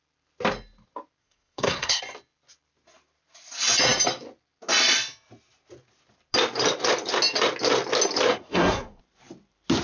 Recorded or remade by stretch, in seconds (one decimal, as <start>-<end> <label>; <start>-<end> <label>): 0.0-1.2 recorded; 1.2-2.0 remade; 2.0-8.3 recorded; 8.3-9.0 remade; 9.0-9.8 recorded